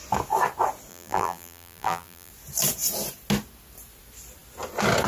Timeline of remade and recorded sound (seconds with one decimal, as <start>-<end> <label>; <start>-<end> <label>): 0.0-0.9 recorded; 0.9-2.3 remade; 2.3-5.1 recorded